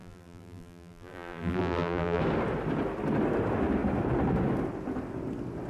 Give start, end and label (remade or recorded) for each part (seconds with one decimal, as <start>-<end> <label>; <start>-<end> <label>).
0.0-2.2 remade; 2.2-5.7 recorded